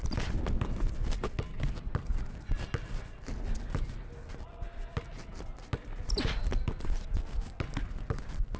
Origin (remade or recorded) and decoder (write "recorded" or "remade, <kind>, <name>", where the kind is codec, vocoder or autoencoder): recorded